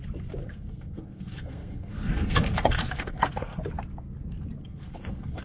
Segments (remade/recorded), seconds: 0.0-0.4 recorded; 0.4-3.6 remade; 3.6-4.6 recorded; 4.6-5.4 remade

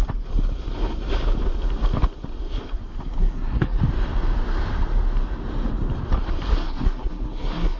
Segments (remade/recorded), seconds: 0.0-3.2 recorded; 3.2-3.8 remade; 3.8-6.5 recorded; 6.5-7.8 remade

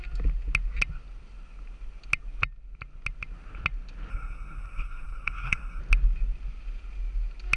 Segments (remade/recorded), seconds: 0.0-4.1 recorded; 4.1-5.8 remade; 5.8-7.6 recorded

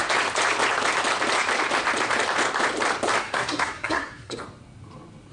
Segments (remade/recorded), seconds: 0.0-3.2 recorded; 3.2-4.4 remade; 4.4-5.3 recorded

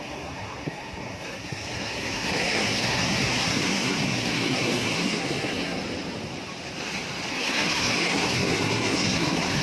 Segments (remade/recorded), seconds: 0.0-5.8 remade; 5.8-7.3 recorded; 7.3-9.6 remade